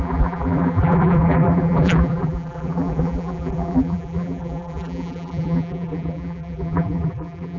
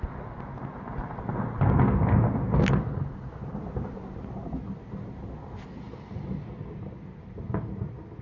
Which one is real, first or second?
second